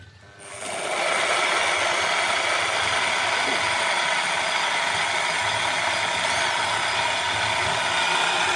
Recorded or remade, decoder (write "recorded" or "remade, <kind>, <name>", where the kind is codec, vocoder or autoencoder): recorded